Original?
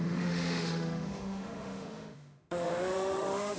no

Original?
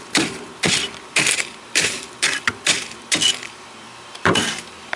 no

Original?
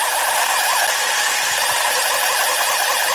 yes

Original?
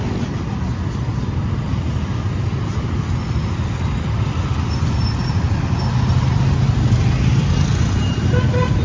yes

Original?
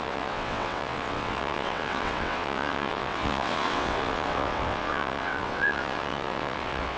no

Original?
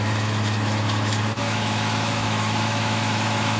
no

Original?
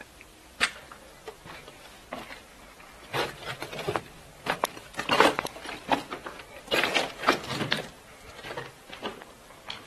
yes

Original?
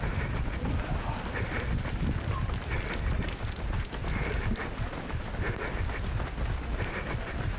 yes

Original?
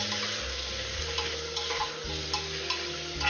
yes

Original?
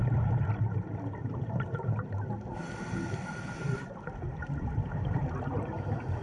no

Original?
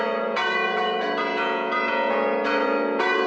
no